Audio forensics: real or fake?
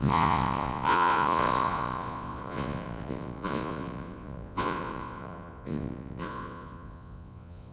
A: fake